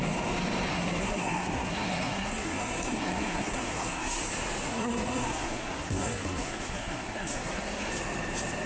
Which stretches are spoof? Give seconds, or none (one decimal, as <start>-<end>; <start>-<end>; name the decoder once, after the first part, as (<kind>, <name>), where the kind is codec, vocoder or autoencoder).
0.7-4.2 (codec, SNAC); 4.7-7.9